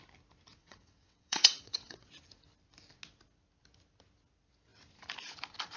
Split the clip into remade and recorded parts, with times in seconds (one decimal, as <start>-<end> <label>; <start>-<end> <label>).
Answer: 0.0-0.6 recorded; 0.6-2.1 remade; 2.1-5.8 recorded